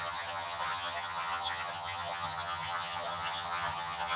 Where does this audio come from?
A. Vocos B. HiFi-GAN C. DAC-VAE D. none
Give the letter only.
B